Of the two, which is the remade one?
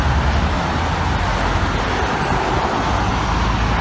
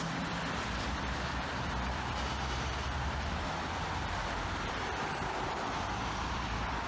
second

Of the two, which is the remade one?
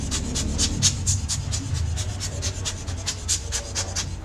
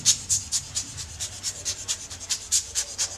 second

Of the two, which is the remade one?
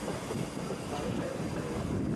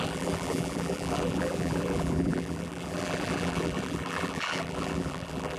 second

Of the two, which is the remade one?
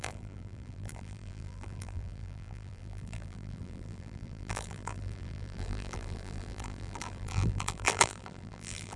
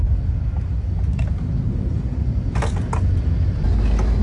first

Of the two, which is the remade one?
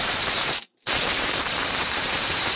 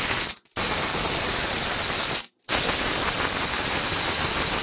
first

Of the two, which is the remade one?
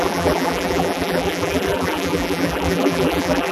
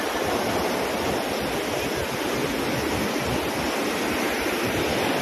first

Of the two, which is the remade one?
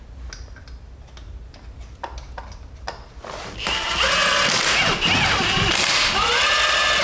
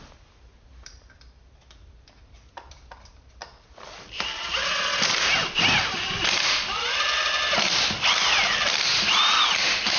second